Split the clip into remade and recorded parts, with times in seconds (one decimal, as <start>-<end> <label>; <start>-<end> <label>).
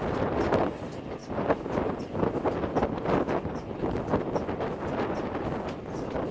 0.0-6.3 recorded